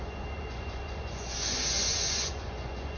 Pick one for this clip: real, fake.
fake